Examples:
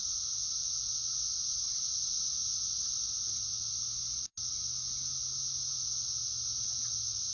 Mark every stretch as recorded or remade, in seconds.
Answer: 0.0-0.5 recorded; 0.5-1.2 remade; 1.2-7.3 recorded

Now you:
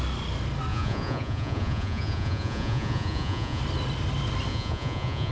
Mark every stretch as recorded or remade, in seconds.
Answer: 0.0-0.7 recorded; 0.7-3.6 remade; 3.6-4.5 recorded; 4.5-5.3 remade